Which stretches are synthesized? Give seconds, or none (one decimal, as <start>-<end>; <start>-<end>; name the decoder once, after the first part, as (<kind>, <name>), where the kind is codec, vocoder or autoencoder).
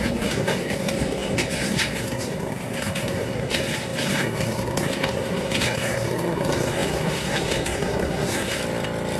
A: 0.0-8.6 (codec, SNAC)